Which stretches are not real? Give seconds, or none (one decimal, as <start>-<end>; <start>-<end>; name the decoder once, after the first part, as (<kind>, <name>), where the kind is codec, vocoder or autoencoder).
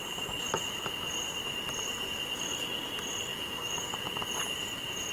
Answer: 3.3-3.8 (autoencoder, DAC-VAE)